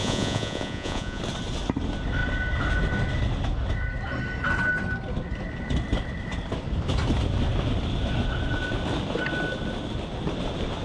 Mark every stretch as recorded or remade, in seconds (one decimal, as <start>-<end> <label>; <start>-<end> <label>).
0.0-1.2 remade; 1.2-10.8 recorded